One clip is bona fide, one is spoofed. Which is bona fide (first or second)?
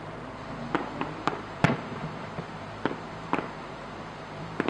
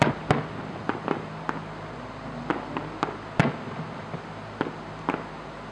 second